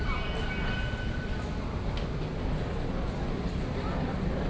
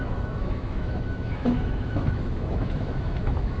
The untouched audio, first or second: first